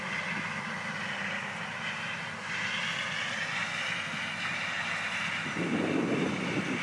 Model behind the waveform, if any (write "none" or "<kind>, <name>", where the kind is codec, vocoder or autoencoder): none